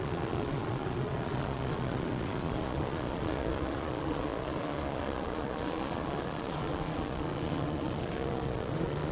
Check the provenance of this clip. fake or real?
fake